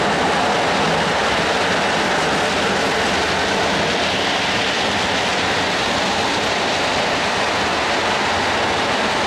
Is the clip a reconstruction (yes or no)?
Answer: no